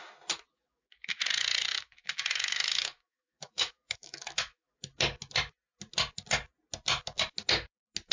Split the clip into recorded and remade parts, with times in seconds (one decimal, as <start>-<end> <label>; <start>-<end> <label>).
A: 0.0-0.5 recorded; 0.5-1.2 remade; 1.2-1.7 recorded; 1.7-4.8 remade; 4.8-8.1 recorded